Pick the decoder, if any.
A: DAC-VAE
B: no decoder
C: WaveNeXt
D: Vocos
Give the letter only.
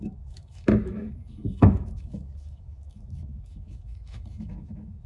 A